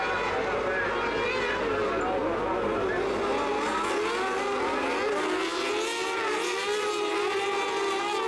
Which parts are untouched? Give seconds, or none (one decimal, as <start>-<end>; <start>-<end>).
0.0-8.3